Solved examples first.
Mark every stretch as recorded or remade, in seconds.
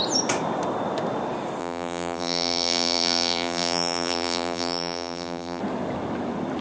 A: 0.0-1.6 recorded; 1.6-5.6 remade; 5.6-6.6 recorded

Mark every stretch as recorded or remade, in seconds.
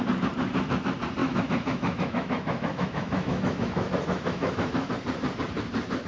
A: 0.0-1.2 recorded; 1.2-4.9 remade; 4.9-6.1 recorded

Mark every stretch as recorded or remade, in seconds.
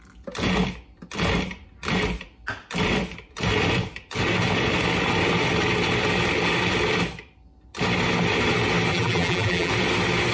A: 0.0-8.9 recorded; 8.9-9.7 remade; 9.7-10.3 recorded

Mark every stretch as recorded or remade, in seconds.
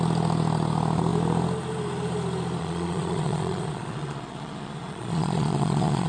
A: 0.0-2.6 recorded; 2.6-6.1 remade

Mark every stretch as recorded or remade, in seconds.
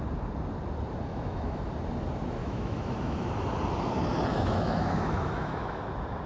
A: 0.0-1.1 recorded; 1.1-1.6 remade; 1.6-2.4 recorded; 2.4-3.3 remade; 3.3-4.3 recorded; 4.3-5.8 remade; 5.8-6.3 recorded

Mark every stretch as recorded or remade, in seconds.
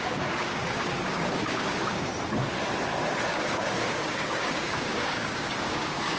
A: 0.0-2.1 remade; 2.1-3.3 recorded; 3.3-6.2 remade